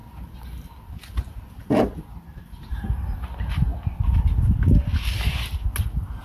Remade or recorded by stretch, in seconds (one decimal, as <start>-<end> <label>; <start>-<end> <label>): 0.0-6.2 recorded